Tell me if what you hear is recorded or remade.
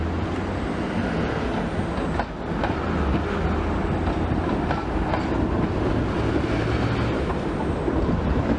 recorded